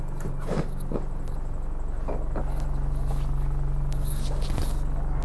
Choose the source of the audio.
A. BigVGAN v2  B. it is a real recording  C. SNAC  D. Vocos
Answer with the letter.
B